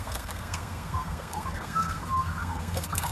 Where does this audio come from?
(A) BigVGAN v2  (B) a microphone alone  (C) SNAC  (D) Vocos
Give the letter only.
C